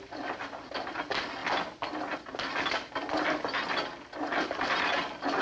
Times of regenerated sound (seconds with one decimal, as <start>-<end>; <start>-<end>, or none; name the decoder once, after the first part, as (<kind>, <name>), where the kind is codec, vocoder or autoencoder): none